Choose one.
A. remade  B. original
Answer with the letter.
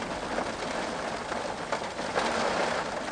B